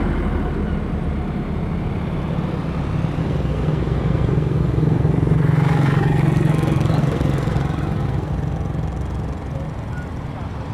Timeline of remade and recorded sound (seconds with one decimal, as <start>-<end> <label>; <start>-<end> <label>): 0.0-3.2 recorded; 3.2-8.3 remade; 8.3-10.7 recorded